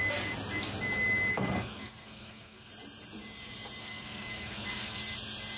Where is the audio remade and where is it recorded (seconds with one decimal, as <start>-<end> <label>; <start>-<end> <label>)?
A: 0.0-1.3 recorded; 1.3-2.7 remade; 2.7-3.8 recorded; 3.8-5.0 remade; 5.0-5.6 recorded